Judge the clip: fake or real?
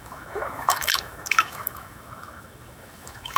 fake